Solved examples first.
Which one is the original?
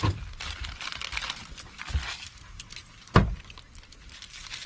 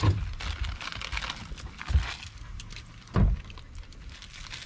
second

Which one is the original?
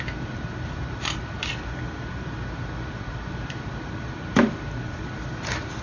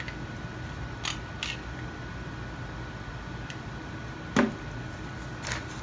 second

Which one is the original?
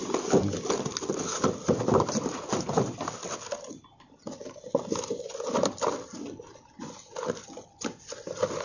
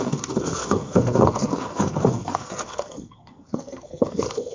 first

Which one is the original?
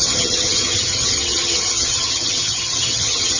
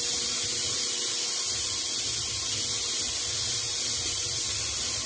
second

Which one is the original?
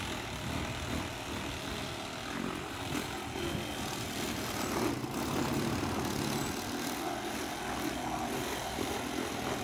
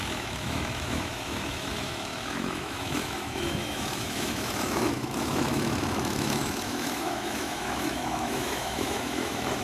first